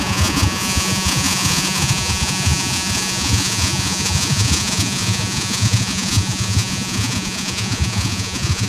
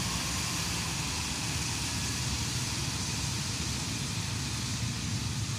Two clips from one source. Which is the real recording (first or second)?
second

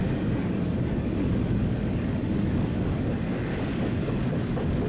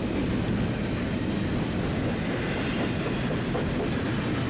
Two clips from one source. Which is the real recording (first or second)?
second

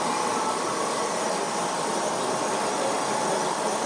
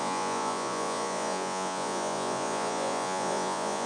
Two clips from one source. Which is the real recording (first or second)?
first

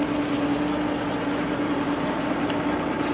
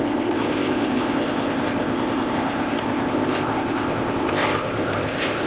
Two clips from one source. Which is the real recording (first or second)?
first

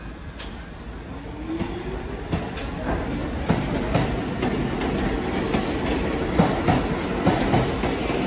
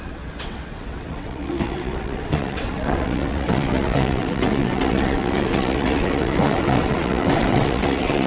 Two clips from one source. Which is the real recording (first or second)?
first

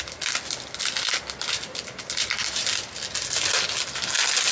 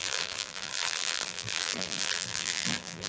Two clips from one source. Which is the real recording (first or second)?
first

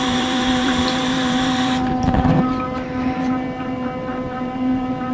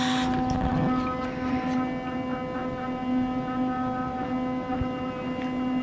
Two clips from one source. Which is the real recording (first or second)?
second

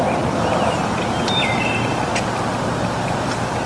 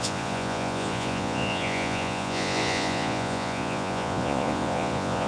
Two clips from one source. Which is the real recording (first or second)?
first